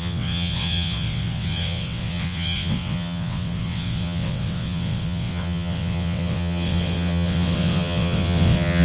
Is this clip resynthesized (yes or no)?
yes